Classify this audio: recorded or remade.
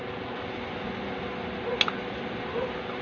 recorded